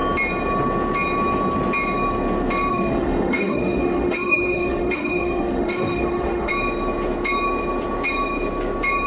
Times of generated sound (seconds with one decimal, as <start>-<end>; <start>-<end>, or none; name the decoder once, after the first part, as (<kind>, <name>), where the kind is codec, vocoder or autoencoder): 2.7-6.5 (autoencoder, DAC-VAE)